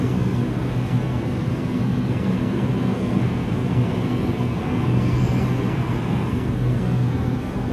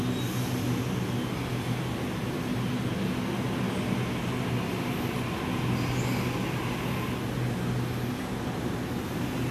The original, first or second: second